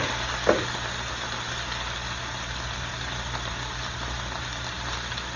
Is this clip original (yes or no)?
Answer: yes